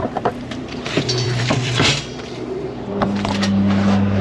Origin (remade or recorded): remade